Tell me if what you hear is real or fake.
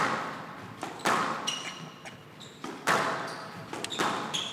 real